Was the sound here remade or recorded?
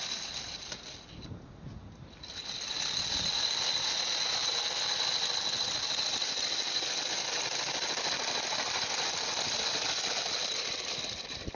recorded